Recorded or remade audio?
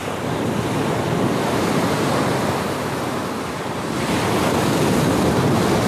recorded